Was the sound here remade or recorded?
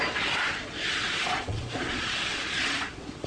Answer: remade